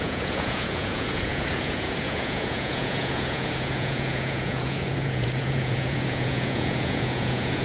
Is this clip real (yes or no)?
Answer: no